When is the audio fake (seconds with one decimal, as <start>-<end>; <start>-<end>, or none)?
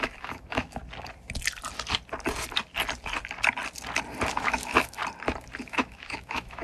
0.0-0.8; 4.3-5.0; 5.6-6.6